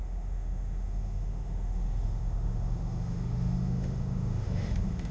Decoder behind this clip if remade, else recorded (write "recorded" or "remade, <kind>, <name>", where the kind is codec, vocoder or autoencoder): remade, autoencoder, DAC-VAE